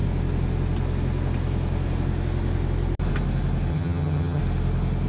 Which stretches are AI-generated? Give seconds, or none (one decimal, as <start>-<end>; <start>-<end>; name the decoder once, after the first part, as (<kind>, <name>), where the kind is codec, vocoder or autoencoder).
3.7-4.4 (vocoder, HiFi-GAN)